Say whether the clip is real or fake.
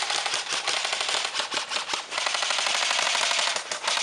real